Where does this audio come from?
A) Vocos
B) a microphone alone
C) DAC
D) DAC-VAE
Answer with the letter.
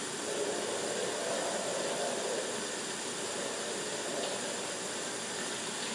B